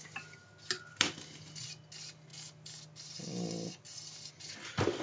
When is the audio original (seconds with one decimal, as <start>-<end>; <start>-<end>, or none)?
0.0-5.0